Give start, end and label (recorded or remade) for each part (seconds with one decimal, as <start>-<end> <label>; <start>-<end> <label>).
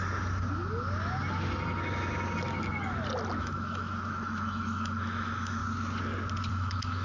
0.0-3.4 recorded; 3.4-5.6 remade; 5.6-6.5 recorded; 6.5-7.0 remade